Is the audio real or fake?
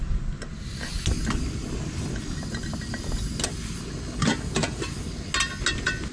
real